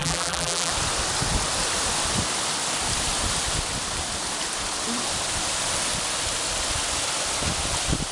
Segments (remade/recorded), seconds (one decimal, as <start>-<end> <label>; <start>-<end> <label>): 0.0-0.7 remade; 0.7-8.1 recorded